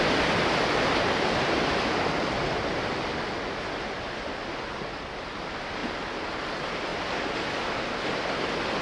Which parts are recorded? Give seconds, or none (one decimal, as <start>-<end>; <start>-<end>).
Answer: 0.0-8.8